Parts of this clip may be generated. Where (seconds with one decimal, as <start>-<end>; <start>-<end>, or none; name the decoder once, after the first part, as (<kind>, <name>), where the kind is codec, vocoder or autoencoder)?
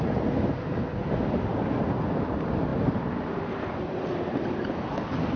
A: none